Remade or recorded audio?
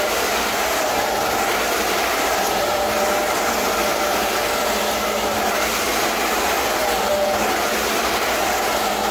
remade